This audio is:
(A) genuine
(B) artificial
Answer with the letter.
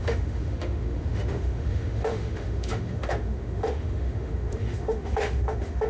B